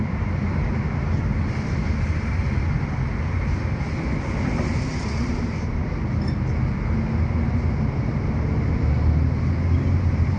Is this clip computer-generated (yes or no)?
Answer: no